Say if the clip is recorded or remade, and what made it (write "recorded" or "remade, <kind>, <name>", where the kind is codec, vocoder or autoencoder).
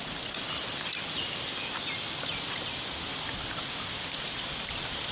recorded